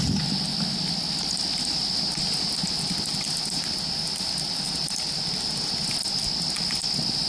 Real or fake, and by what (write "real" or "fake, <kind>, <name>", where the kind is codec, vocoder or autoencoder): real